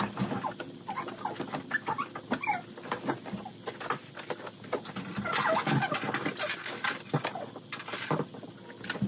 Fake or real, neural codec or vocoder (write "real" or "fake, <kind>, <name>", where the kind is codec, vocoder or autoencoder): real